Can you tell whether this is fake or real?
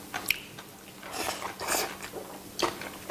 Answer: real